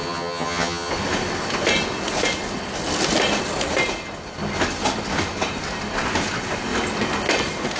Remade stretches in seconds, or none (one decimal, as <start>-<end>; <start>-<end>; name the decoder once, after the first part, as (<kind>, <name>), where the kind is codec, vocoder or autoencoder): 0.0-0.9 (vocoder, HiFi-GAN)